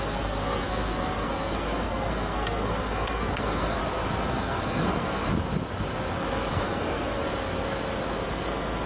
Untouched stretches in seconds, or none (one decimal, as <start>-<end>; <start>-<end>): 3.8-4.3; 5.2-6.5; 7.2-8.9